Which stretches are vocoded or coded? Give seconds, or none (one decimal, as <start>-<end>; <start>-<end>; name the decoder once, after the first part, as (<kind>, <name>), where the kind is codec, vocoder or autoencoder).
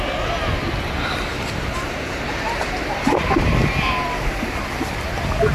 1.3-4.6 (vocoder, BigVGAN v2)